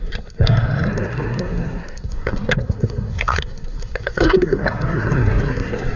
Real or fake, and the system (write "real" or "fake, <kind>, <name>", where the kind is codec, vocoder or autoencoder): fake, codec, SNAC